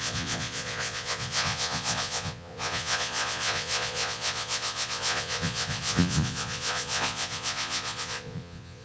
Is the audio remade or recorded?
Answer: remade